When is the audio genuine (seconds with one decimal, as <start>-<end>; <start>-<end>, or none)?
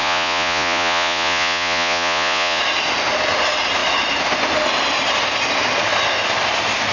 2.6-6.9